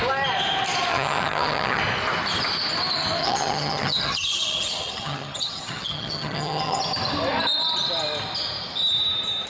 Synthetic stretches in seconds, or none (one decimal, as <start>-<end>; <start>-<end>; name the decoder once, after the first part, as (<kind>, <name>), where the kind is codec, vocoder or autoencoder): 0.9-1.8 (vocoder, HiFi-GAN); 3.2-6.8